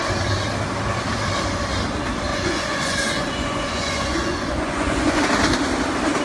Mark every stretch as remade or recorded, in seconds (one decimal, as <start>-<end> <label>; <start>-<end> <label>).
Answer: 0.0-2.3 recorded; 2.3-5.2 remade; 5.2-6.2 recorded